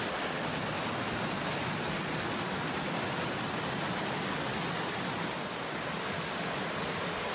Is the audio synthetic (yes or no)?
no